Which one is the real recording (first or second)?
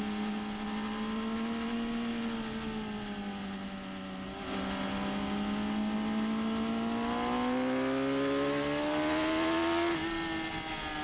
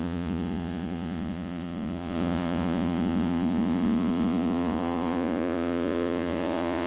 first